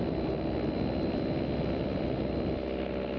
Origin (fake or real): real